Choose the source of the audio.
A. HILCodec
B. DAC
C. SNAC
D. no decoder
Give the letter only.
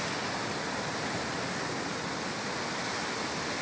D